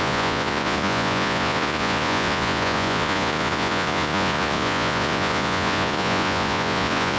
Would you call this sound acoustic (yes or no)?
no